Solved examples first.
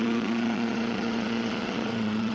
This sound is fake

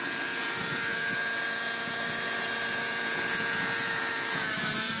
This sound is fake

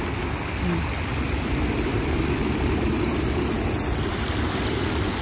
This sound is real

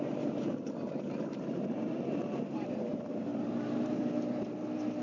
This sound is fake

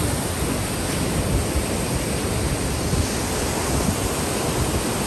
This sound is real